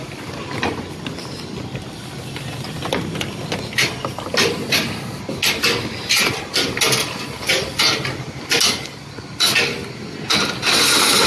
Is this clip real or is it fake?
real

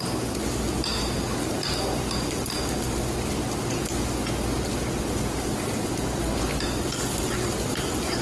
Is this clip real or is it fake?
real